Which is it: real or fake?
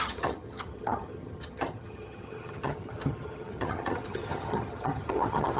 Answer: fake